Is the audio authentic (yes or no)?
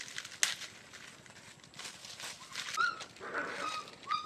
yes